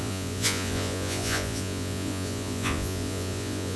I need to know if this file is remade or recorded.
remade